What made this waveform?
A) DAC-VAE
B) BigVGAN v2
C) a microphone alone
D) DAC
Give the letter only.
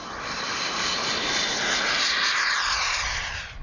C